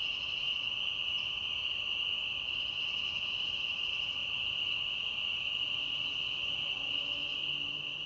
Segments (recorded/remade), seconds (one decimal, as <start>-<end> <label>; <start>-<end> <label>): 0.0-8.1 recorded